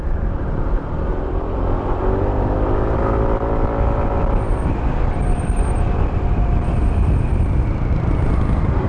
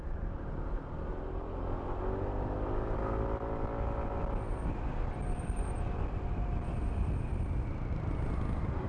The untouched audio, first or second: second